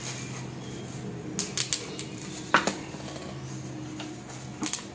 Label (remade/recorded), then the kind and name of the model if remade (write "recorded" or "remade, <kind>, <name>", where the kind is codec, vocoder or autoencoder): recorded